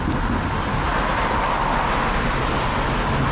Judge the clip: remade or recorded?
recorded